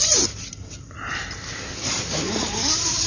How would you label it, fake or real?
real